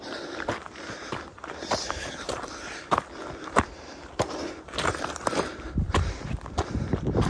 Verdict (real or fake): fake